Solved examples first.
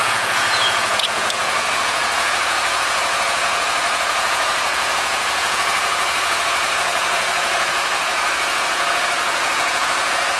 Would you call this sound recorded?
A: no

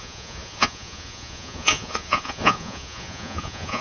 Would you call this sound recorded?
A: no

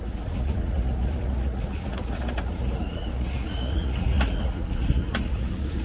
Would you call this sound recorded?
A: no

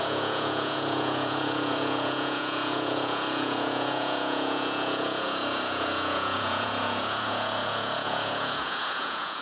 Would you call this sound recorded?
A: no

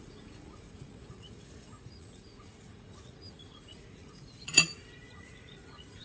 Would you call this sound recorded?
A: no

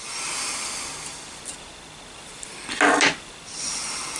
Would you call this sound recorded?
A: yes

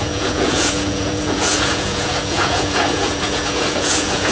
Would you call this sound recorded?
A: no